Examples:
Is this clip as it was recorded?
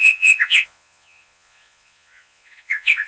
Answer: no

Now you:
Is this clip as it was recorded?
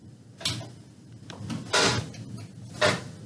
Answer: yes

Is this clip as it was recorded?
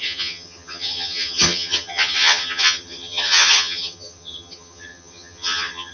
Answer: no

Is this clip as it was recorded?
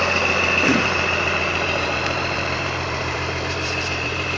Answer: no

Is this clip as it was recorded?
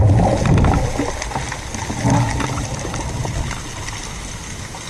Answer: yes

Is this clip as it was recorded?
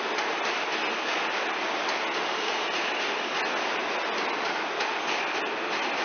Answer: yes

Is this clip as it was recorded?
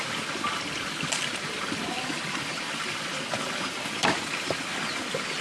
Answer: yes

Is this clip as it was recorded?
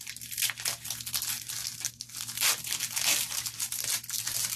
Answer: yes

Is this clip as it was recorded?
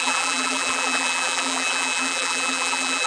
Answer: no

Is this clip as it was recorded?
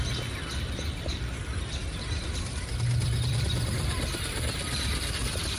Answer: no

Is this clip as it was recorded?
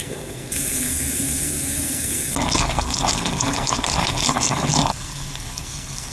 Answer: no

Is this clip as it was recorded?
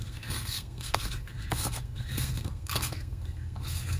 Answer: no